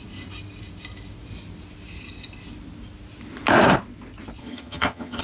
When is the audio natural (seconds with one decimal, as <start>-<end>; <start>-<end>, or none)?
0.0-4.4